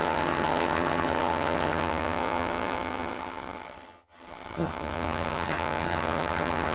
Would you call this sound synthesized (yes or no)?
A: yes